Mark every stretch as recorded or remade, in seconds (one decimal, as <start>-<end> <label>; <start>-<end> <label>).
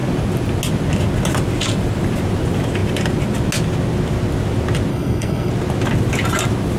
0.0-4.9 recorded; 4.9-5.5 remade; 5.5-6.8 recorded